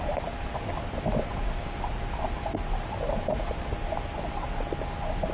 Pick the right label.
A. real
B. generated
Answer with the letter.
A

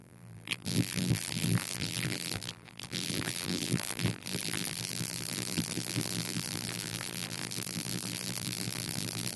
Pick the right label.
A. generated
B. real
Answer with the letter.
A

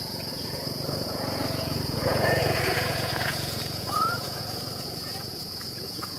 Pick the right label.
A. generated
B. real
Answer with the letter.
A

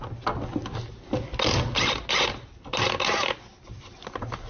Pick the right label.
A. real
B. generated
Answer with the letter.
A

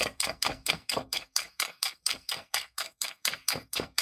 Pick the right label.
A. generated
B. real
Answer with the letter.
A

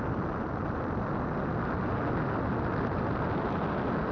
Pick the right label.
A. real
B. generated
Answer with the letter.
A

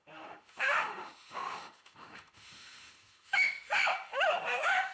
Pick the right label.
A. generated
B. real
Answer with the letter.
A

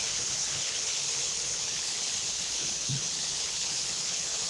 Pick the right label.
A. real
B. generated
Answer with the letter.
B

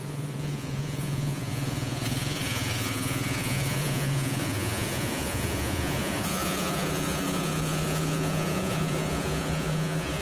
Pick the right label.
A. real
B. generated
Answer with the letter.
B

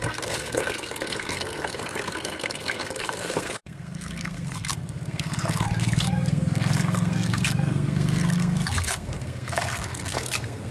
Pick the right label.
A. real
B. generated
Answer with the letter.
B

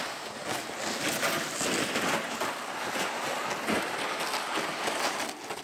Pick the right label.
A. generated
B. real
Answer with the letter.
B